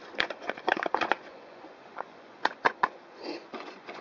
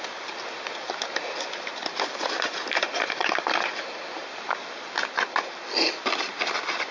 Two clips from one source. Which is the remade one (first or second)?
first